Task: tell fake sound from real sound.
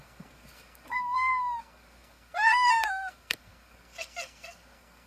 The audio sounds fake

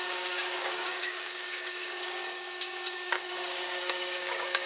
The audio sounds fake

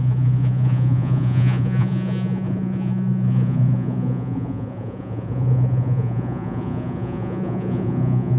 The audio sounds fake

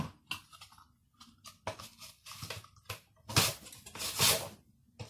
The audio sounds real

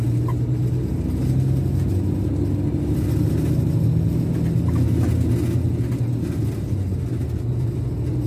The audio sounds real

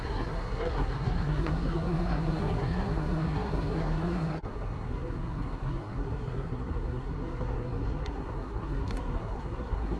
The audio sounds fake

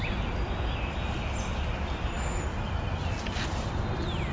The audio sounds real